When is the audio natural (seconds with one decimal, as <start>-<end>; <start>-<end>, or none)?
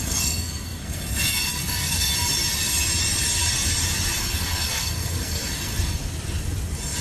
2.1-4.2; 5.7-7.0